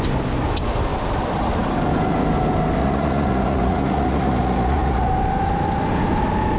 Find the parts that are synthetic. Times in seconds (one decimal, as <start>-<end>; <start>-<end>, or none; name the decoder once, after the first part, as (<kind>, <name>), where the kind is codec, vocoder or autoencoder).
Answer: 2.8-5.1 (vocoder, Vocos)